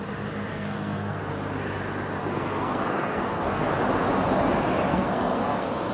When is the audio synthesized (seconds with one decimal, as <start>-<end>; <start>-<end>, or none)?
0.5-1.2; 2.2-3.7; 4.9-5.9